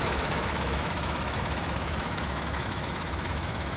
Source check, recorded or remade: remade